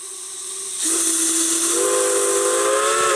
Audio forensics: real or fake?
real